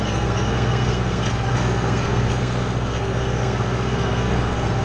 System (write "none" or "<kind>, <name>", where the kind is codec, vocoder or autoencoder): codec, SNAC